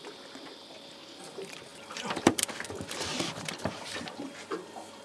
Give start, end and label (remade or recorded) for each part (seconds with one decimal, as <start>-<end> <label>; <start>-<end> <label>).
0.0-5.0 recorded